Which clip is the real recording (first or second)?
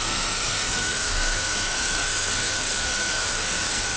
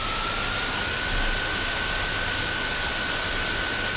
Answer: second